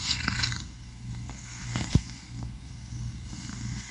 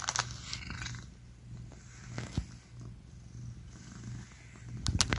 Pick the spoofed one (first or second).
first